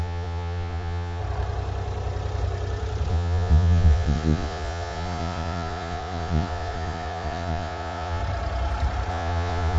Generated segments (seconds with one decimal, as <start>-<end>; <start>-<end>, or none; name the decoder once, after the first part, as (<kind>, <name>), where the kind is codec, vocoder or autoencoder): 0.0-1.2 (vocoder, Vocos); 3.1-8.2; 9.1-9.8